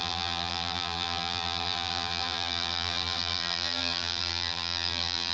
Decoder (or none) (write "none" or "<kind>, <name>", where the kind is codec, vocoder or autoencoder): vocoder, BigVGAN v2